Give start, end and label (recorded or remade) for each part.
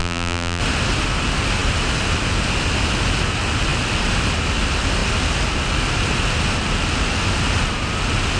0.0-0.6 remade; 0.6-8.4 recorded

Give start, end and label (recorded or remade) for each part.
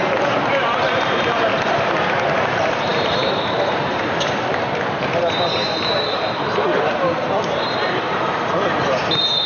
0.0-1.5 remade; 1.5-2.4 recorded; 2.4-9.5 remade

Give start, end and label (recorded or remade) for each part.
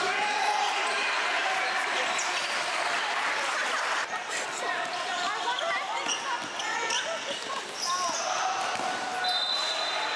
0.0-1.4 recorded; 1.4-2.8 remade; 2.8-10.2 recorded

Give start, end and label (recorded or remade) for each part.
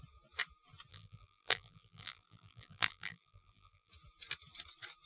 0.0-0.9 recorded; 0.9-3.9 remade; 3.9-5.0 recorded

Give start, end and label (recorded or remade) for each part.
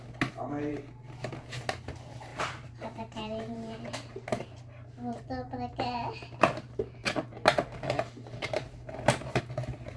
0.0-2.3 recorded; 2.3-4.6 remade; 4.6-7.0 recorded; 7.0-9.4 remade; 9.4-10.0 recorded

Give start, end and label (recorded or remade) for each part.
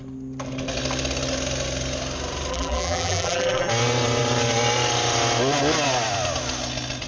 0.0-2.5 recorded; 2.5-3.7 remade; 3.7-7.1 recorded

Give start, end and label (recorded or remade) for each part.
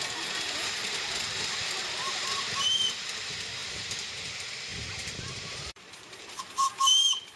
0.0-3.6 recorded; 3.6-4.1 remade; 4.1-4.7 recorded; 4.7-6.4 remade; 6.4-7.4 recorded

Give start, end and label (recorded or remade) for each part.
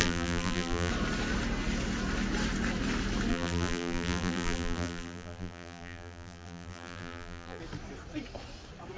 0.0-0.9 remade; 0.9-3.3 recorded; 3.3-7.6 remade; 7.6-9.0 recorded